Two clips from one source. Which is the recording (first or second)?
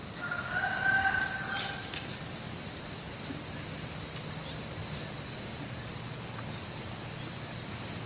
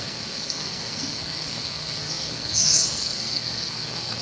first